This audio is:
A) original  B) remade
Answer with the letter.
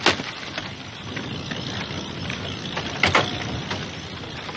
A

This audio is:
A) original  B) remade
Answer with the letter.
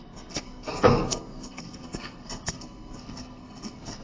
B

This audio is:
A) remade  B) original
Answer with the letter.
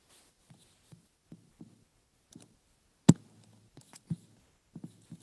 B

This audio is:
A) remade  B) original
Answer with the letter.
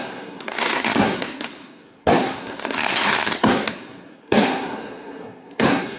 A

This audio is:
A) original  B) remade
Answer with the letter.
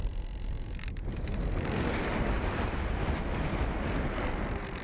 A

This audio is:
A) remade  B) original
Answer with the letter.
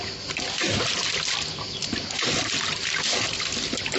B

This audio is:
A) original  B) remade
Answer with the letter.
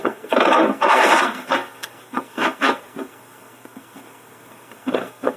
B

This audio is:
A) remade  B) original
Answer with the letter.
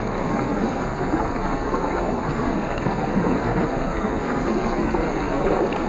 A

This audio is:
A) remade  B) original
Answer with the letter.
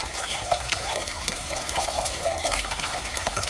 A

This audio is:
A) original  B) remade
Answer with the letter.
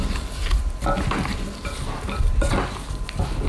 A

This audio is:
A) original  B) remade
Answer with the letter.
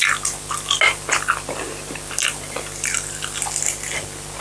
A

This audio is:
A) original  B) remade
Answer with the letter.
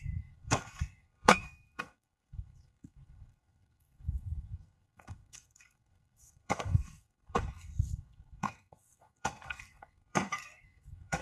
B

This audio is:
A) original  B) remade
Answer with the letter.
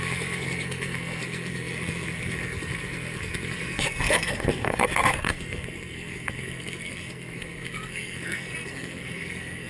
B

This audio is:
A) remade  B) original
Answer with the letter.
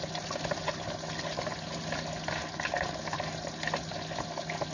B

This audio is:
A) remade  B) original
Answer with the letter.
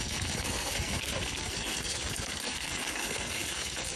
A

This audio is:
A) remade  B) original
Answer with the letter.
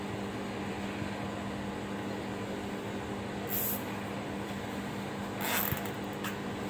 B